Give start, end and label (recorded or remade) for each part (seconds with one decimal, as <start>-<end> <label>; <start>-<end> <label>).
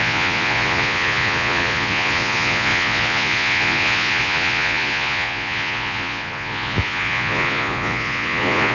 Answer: 0.0-8.7 remade